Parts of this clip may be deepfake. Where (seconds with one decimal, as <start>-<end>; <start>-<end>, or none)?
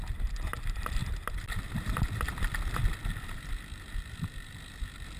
none